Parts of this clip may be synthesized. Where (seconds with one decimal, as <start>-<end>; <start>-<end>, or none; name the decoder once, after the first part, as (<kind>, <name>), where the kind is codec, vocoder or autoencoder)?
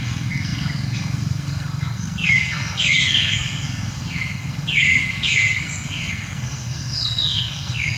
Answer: 0.0-8.0 (codec, SNAC)